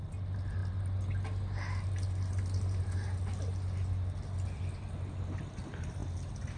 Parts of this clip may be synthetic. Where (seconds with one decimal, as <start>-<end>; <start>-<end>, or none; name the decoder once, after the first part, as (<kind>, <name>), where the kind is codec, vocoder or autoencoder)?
none

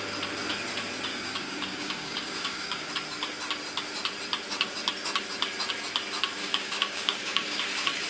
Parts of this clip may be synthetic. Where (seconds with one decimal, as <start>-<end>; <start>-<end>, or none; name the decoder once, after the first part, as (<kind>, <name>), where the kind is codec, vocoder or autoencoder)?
1.1-2.9 (codec, DAC); 6.4-7.6

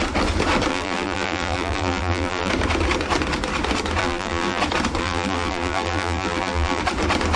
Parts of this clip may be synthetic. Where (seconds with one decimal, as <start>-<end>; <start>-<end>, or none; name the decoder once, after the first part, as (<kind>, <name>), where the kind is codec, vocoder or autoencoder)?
0.7-2.5 (vocoder, BigVGAN v2); 4.0-4.6; 5.0-6.8

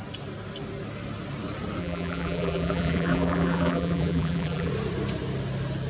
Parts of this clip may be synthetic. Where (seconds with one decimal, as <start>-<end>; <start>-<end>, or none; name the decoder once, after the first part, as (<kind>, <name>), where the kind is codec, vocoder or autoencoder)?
1.8-4.7 (vocoder, BigVGAN v2)

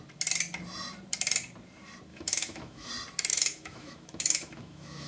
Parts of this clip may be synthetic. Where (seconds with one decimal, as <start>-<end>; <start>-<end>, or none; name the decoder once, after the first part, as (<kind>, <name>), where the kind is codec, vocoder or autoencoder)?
2.1-2.9 (autoencoder, DAC-VAE); 3.3-5.1